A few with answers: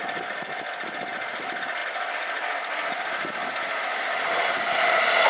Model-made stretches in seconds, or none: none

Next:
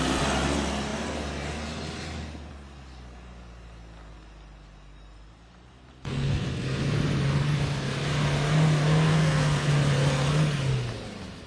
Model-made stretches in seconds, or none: 6.1-6.8 (codec, SNAC); 9.1-9.7

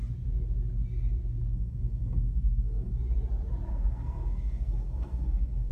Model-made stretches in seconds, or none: 1.5-3.0 (codec, SNAC); 3.7-5.7